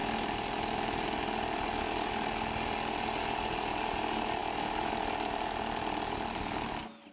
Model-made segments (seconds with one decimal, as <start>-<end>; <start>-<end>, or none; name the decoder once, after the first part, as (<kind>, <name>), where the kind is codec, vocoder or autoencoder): 4.4-4.9 (autoencoder, DAC-VAE)